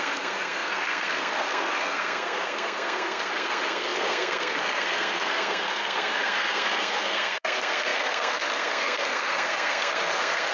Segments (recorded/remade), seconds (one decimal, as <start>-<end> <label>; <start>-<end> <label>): 0.0-10.5 remade